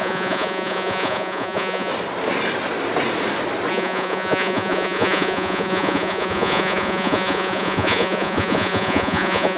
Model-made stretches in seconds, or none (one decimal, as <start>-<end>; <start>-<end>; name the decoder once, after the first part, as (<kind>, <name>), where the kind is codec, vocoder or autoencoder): 0.0-1.9 (vocoder, Vocos); 3.7-9.6